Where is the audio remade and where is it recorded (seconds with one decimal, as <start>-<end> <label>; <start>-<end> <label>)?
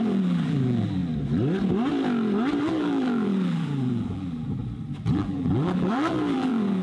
0.0-1.0 remade; 1.0-2.6 recorded; 2.6-4.6 remade; 4.6-5.1 recorded; 5.1-6.8 remade